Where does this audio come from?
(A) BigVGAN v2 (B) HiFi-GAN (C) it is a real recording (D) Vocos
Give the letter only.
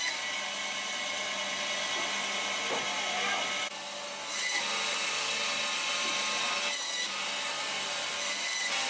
C